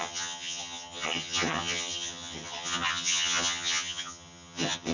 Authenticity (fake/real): fake